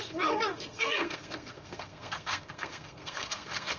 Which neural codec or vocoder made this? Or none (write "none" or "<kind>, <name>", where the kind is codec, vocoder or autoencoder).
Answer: codec, SNAC